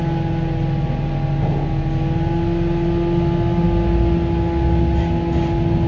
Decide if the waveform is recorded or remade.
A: recorded